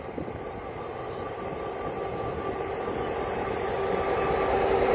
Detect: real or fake real